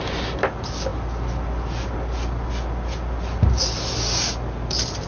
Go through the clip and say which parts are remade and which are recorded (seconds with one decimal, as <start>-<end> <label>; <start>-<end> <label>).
0.0-5.1 recorded